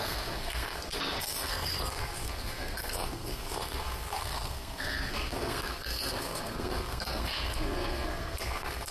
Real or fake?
fake